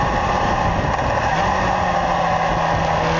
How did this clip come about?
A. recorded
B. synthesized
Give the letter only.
A